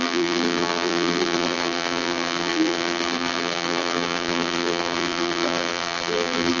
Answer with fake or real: fake